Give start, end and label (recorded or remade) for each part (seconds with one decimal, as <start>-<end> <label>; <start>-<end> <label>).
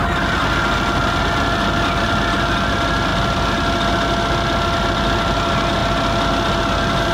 0.0-7.1 recorded